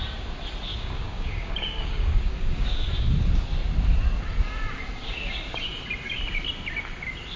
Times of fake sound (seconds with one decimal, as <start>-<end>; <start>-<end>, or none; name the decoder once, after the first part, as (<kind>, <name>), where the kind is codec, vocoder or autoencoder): 0.7-2.9 (codec, DAC)